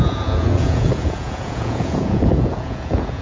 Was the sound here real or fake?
fake